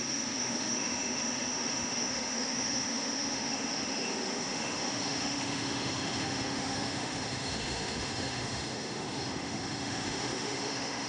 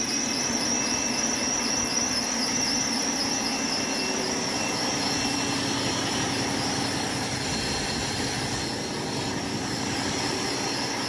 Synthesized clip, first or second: first